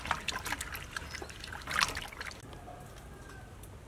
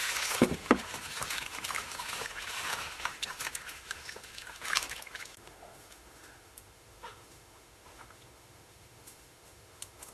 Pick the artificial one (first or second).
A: second